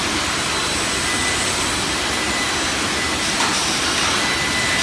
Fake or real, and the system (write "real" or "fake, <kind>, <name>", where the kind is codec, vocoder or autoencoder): real